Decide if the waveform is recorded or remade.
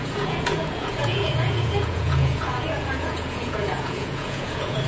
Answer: remade